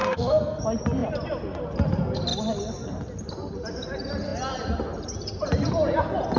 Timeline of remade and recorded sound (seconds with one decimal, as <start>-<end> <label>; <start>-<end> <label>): 0.0-0.6 remade; 0.6-6.4 recorded